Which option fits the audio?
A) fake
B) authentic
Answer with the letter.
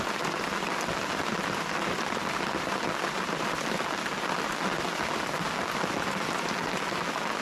B